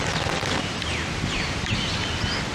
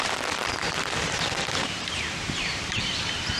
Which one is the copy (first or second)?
second